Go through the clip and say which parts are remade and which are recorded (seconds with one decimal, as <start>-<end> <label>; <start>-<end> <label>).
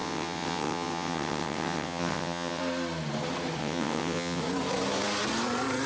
0.0-2.6 remade; 2.6-3.6 recorded; 3.6-4.4 remade; 4.4-5.9 recorded